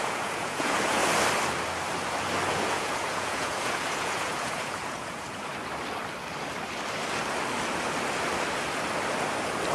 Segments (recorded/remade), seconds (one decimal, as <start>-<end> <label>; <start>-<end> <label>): 0.0-1.0 remade; 1.0-2.5 recorded; 2.5-5.5 remade; 5.5-9.7 recorded